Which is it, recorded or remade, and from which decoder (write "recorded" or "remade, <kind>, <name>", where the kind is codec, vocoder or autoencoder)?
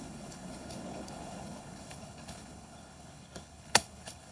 remade, codec, HILCodec